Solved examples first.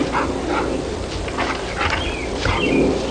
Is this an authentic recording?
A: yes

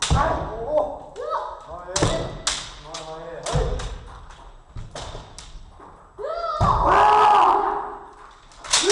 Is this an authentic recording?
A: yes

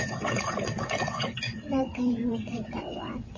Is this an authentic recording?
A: no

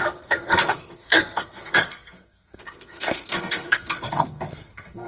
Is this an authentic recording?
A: no